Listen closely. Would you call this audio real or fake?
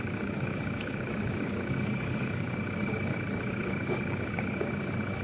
fake